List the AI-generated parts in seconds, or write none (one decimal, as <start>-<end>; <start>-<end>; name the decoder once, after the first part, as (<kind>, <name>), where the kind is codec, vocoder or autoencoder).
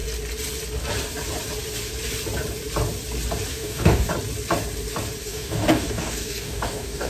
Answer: 3.5-4.1 (codec, DAC); 5.2-7.1